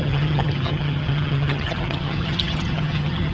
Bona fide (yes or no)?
no